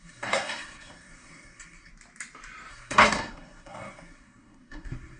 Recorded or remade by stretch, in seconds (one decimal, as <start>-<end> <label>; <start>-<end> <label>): 0.0-1.9 remade; 1.9-2.7 recorded; 2.7-5.2 remade